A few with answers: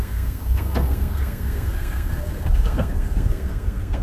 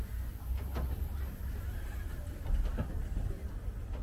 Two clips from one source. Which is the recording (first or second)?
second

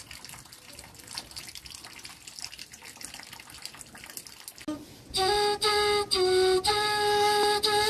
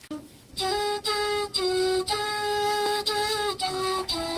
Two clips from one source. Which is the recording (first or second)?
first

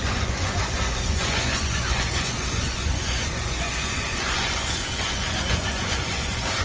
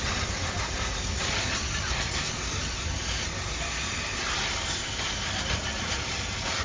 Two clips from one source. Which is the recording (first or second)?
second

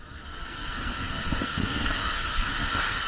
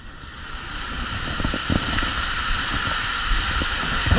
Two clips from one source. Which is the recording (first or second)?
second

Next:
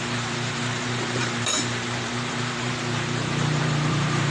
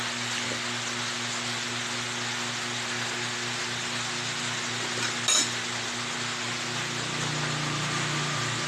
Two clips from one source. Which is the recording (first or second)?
second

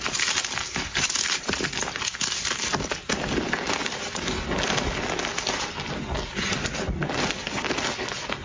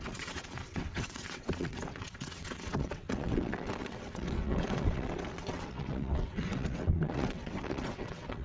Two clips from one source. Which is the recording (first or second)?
first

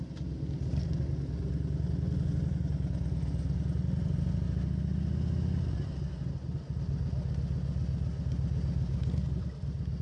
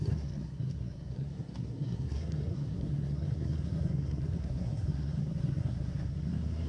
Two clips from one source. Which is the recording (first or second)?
first